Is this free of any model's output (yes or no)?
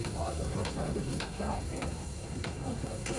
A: no